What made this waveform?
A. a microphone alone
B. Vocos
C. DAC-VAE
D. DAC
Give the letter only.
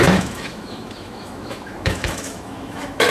C